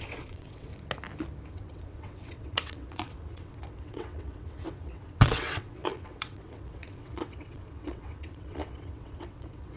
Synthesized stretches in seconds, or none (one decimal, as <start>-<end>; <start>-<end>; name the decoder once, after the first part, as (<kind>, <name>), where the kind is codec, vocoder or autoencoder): 0.0-0.7 (vocoder, WaveNeXt); 1.5-9.8